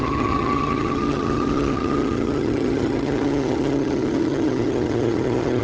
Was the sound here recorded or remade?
remade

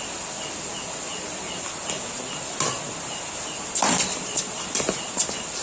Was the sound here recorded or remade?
recorded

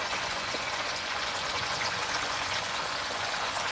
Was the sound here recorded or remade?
remade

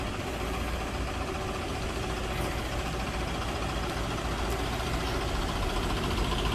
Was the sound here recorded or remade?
recorded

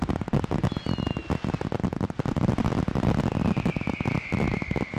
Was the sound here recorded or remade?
recorded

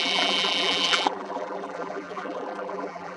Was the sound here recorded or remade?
remade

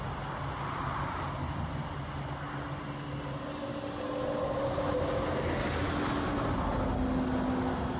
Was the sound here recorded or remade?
recorded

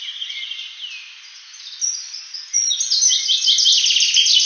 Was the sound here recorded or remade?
recorded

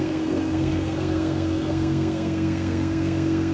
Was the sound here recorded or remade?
remade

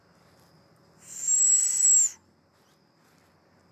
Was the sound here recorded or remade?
recorded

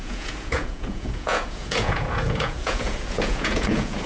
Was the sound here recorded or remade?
remade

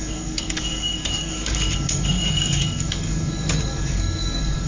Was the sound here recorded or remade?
remade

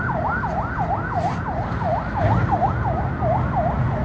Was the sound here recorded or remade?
recorded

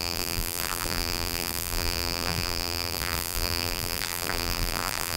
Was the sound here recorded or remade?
remade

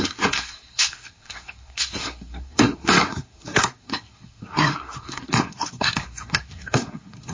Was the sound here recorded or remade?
remade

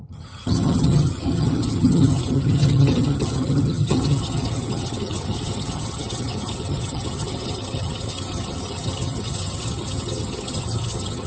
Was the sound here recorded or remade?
remade